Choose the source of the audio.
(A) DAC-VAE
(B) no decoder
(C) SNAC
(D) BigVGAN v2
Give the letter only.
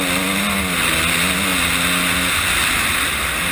B